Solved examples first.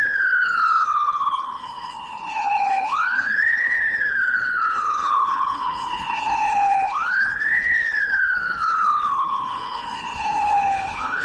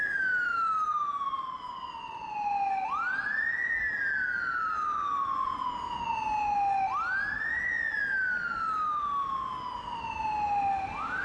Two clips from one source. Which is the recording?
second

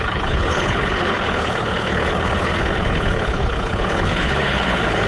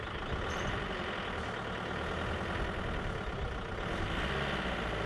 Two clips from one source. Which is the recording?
second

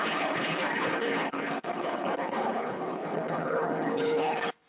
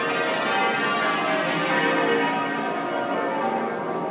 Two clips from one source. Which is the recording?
second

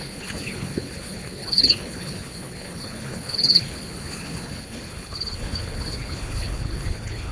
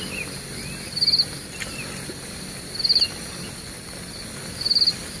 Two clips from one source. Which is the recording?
second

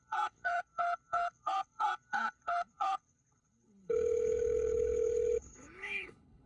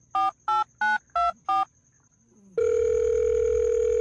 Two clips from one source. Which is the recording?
second